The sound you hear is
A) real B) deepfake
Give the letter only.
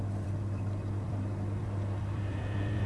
B